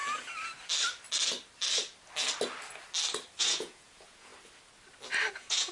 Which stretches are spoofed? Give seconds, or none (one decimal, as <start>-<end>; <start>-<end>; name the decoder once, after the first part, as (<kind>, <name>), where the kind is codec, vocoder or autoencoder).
3.4-4.3 (vocoder, Vocos); 5.3-5.7